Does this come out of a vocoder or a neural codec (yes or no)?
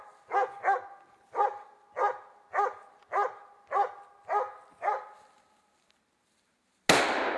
no